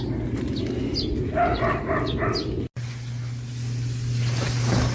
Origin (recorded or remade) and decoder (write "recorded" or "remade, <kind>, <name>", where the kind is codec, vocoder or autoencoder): recorded